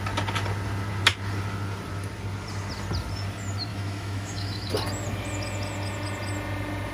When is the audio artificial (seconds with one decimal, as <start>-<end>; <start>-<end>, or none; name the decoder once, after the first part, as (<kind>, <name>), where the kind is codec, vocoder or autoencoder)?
3.7-4.7 (autoencoder, DAC-VAE)